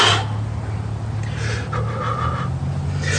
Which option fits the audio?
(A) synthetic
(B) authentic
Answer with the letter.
B